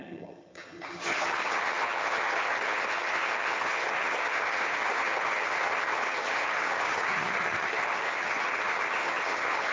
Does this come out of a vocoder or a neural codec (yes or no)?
yes